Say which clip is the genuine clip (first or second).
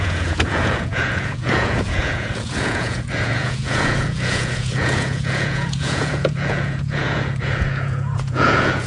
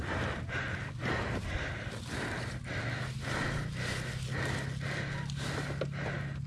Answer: second